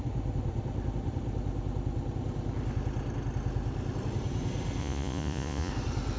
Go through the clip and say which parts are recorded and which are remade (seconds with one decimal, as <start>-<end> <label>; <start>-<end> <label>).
0.0-4.8 recorded; 4.8-5.7 remade; 5.7-6.2 recorded